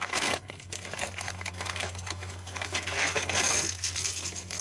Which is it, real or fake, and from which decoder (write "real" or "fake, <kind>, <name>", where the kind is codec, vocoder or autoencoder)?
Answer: fake, codec, SNAC